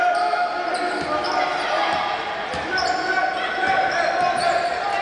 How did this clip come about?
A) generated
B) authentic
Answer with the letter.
B